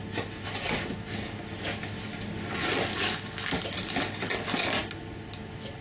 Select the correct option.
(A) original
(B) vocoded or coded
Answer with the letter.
A